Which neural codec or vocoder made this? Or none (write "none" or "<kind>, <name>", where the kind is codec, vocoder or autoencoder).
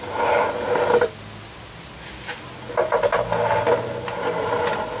none